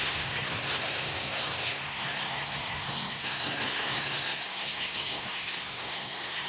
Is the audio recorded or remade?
remade